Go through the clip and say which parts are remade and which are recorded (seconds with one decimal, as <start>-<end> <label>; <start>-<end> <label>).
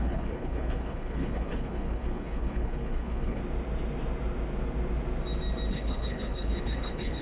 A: 0.0-3.4 remade; 3.4-5.7 recorded; 5.7-7.2 remade